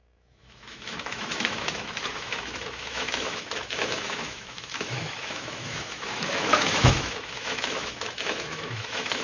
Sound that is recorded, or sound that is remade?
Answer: remade